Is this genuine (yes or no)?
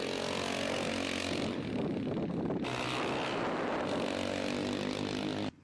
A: yes